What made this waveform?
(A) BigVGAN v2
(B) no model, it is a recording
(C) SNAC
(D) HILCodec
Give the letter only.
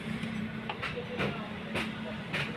B